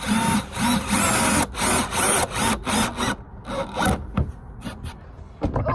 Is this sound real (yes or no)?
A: yes